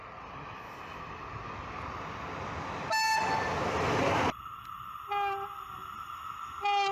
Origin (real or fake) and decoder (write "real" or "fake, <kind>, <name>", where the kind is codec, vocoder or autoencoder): real